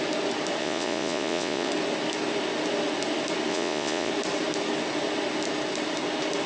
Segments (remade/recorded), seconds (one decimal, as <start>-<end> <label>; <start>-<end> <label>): 0.0-0.6 recorded; 0.6-1.7 remade; 1.7-3.5 recorded; 3.5-4.1 remade; 4.1-6.5 recorded